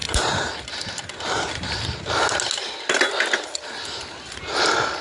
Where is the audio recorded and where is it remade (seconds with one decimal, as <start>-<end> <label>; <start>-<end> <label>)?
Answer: 0.0-5.0 recorded